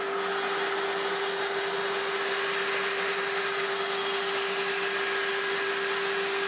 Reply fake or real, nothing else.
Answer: real